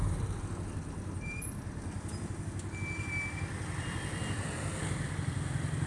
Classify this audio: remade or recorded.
recorded